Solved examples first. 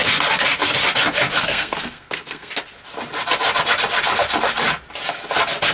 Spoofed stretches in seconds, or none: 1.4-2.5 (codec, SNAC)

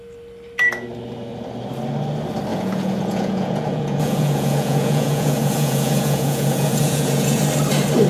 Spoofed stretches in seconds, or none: 2.5-7.4 (vocoder, Vocos)

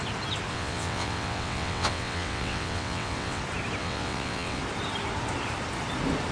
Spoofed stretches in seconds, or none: 0.5-3.4 (vocoder, WaveNeXt); 3.8-4.6

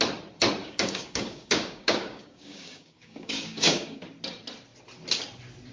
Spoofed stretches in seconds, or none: 0.6-4.0 (codec, DAC)

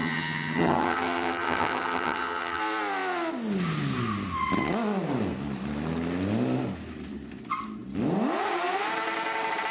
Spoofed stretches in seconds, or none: 0.0-2.6 (vocoder, HiFi-GAN)

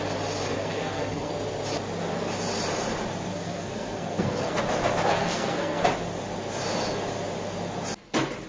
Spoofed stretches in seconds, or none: 0.5-1.3 (codec, SNAC); 3.3-4.6; 5.1-5.9